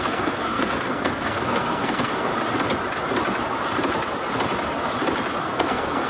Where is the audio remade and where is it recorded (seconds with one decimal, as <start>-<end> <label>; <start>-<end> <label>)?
0.0-2.3 remade; 2.3-5.4 recorded; 5.4-6.1 remade